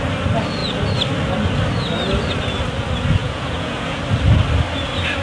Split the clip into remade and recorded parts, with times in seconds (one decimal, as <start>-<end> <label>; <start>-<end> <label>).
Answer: 0.0-3.2 recorded; 3.2-4.0 remade; 4.0-5.2 recorded